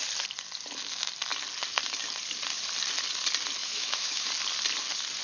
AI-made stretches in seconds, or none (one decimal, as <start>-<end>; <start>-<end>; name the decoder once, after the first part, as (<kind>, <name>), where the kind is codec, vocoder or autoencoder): 3.6-4.3 (autoencoder, DAC-VAE)